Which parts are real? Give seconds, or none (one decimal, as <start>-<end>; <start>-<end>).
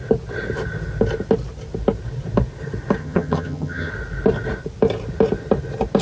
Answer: 0.0-3.0; 3.9-6.0